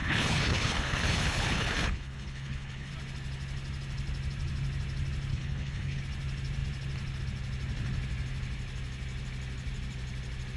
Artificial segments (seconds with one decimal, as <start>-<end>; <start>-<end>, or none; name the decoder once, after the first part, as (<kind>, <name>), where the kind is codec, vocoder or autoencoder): 0.0-2.9 (codec, HILCodec); 5.3-6.0